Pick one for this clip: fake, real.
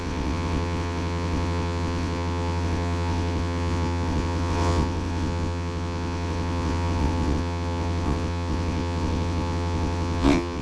fake